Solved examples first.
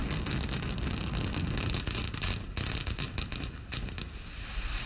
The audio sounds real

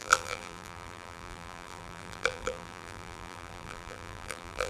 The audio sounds fake